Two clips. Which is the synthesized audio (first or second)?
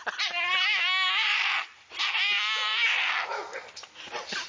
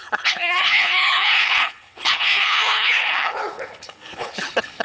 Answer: second